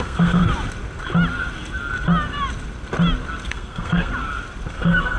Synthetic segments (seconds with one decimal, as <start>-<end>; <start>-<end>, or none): 0.0-0.4; 3.5-4.1; 4.7-5.2